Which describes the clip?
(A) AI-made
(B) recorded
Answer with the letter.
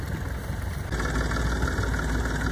B